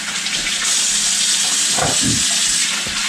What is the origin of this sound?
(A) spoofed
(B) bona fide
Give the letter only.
B